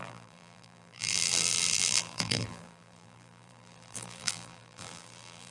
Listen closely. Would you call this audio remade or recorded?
remade